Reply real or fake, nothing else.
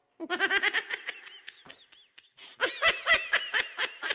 real